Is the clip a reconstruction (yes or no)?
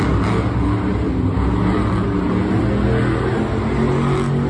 no